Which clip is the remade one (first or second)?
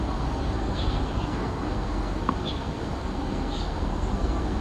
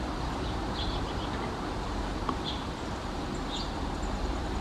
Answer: first